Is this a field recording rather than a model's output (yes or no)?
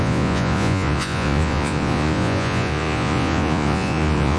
no